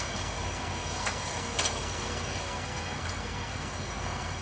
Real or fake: fake